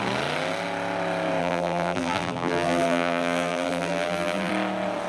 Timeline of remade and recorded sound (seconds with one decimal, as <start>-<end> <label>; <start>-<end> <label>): 0.0-1.4 recorded; 1.4-4.5 remade; 4.5-5.1 recorded